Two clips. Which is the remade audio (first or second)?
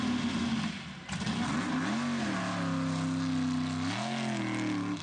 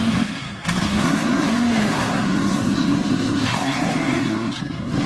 second